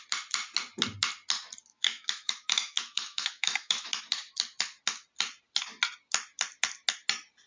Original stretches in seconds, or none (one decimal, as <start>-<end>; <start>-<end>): 0.0-1.7; 4.0-7.5